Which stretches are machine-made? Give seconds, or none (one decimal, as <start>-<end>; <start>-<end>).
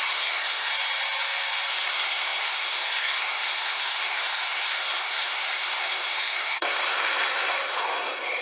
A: 0.0-0.7; 1.7-8.4